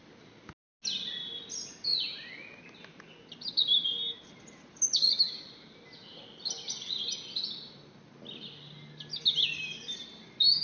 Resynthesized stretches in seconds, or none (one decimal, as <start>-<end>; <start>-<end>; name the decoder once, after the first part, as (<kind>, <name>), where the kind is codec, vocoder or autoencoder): none